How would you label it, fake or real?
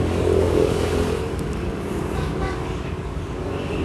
fake